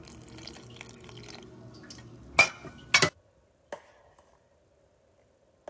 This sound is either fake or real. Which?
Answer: real